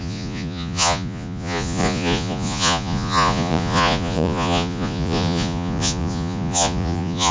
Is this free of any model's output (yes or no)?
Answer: no